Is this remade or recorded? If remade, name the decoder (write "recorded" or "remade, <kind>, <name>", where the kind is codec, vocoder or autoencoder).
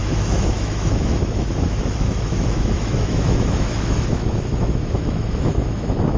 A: remade, autoencoder, DAC-VAE